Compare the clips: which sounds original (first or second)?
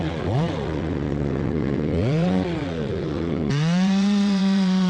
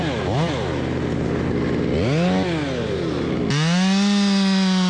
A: second